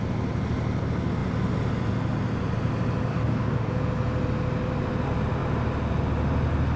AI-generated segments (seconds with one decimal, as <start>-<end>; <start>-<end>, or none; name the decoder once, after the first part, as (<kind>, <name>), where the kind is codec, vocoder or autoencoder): 3.1-3.7 (codec, DAC)